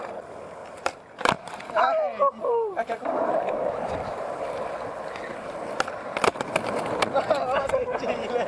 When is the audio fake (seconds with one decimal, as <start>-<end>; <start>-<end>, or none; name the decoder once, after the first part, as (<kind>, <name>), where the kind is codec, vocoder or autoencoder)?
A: 0.6-4.4 (vocoder, BigVGAN v2)